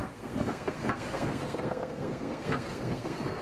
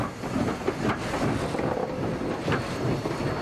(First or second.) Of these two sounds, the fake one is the first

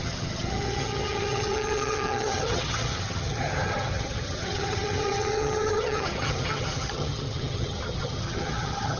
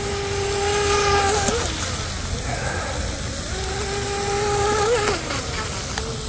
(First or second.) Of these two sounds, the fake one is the first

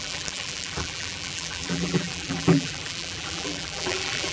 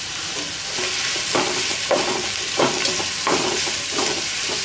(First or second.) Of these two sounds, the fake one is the first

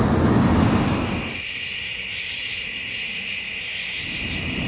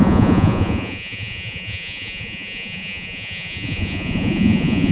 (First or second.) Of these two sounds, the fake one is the second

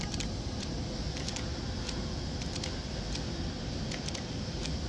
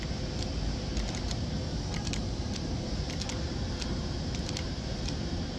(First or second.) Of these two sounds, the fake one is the second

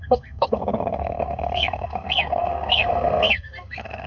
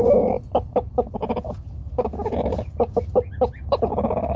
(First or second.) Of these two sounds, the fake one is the first